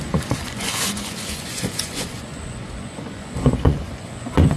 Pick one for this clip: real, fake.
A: fake